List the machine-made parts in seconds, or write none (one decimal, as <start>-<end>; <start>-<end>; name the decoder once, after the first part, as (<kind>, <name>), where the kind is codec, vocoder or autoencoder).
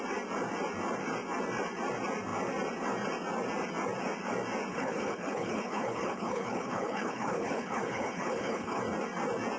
4.7-8.8 (codec, HILCodec)